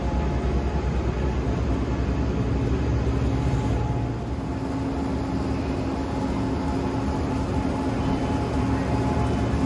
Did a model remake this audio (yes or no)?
no